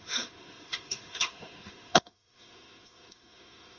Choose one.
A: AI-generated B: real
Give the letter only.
A